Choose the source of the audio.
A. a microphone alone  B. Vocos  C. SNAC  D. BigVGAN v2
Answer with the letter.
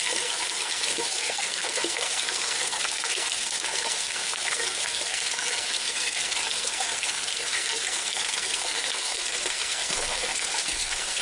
C